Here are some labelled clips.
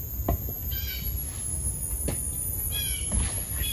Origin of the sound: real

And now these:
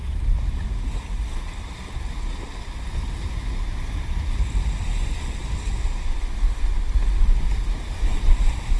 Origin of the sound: real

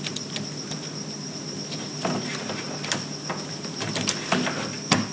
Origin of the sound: real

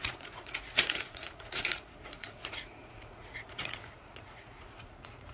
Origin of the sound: fake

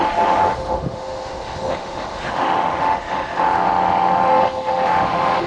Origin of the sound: fake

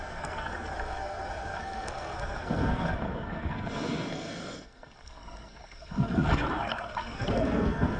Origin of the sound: fake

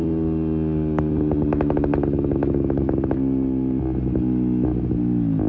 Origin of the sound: real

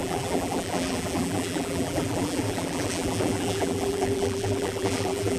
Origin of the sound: fake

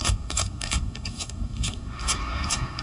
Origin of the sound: fake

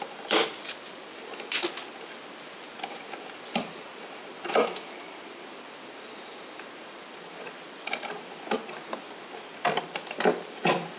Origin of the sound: fake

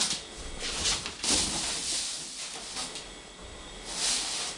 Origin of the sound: real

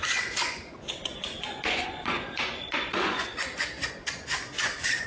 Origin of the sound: fake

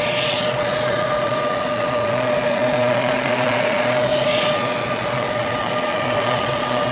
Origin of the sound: fake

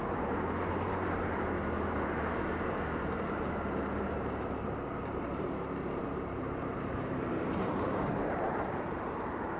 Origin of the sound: fake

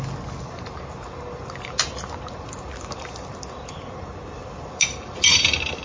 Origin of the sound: real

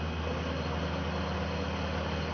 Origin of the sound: real